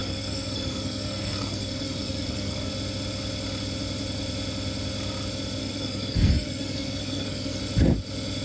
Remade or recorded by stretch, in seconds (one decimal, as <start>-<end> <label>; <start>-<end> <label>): 0.0-2.7 remade; 2.7-5.6 recorded; 5.6-7.6 remade; 7.6-8.4 recorded